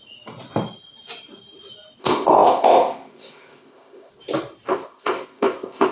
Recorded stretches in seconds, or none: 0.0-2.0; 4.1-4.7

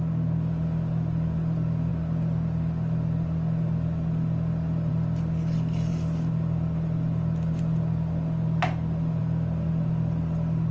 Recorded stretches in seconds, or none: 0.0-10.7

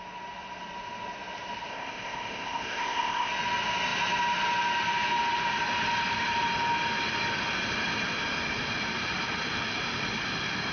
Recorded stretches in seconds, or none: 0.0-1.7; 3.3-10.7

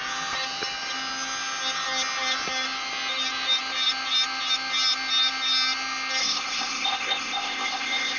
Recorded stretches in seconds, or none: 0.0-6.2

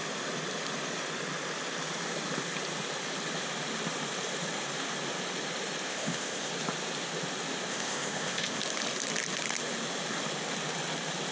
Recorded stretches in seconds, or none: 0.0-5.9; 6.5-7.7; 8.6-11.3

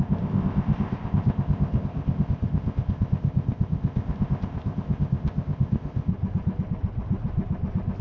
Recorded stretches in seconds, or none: 6.1-8.0

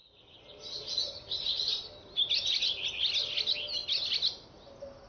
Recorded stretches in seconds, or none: 0.0-5.1